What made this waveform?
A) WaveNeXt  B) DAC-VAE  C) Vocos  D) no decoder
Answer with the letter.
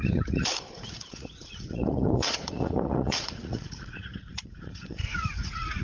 C